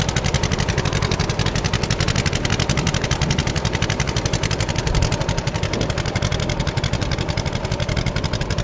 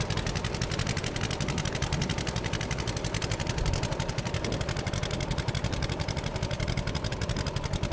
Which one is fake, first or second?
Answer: second